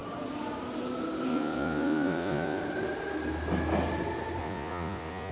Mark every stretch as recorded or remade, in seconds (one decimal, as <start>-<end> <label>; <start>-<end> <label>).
0.0-1.3 recorded; 1.3-2.6 remade; 2.6-4.4 recorded; 4.4-5.3 remade